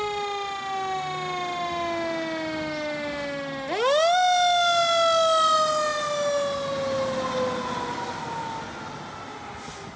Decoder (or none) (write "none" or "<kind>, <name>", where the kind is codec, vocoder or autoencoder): none